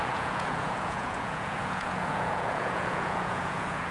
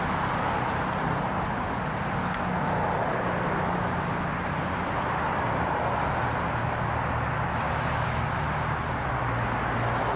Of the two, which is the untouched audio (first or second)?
second